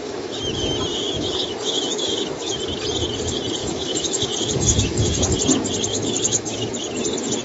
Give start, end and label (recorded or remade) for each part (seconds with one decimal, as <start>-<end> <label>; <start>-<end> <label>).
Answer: 0.0-0.9 recorded; 0.9-2.6 remade; 2.6-3.6 recorded; 3.6-5.3 remade; 5.3-5.9 recorded; 5.9-6.7 remade; 6.7-7.4 recorded